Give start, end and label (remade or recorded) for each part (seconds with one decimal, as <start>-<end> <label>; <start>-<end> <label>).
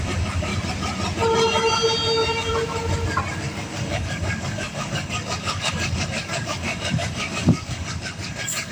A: 0.0-0.5 remade; 0.5-3.4 recorded; 3.4-8.7 remade